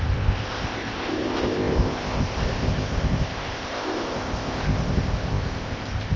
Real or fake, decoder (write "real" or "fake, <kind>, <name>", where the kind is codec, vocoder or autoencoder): fake, codec, ZipCodec